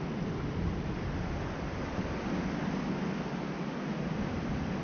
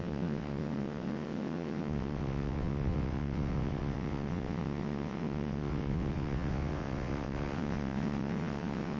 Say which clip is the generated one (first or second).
second